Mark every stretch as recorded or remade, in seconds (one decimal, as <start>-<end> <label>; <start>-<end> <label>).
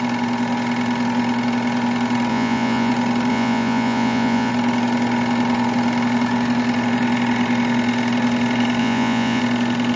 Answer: 0.0-2.3 recorded; 2.3-2.9 remade; 2.9-3.3 recorded; 3.3-4.5 remade; 4.5-8.8 recorded; 8.8-9.4 remade; 9.4-10.0 recorded